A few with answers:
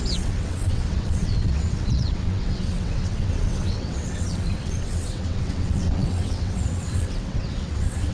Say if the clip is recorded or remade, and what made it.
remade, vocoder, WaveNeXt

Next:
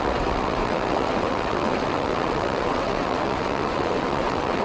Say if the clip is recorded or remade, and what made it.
remade, vocoder, WaveNeXt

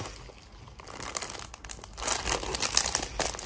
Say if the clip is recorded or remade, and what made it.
recorded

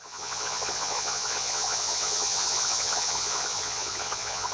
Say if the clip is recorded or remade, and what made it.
remade, vocoder, Vocos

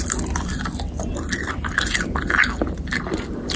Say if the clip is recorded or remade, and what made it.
recorded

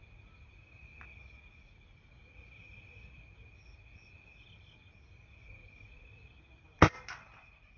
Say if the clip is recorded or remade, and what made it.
recorded